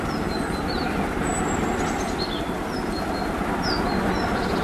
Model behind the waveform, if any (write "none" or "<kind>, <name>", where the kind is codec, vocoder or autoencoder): none